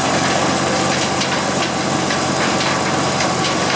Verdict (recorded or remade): recorded